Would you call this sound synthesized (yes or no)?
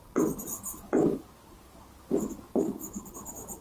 no